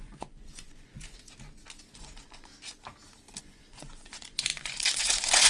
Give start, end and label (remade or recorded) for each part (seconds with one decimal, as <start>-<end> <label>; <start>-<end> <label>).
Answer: 0.0-0.9 remade; 0.9-1.8 recorded; 1.8-2.5 remade; 2.5-3.4 recorded; 3.4-5.5 remade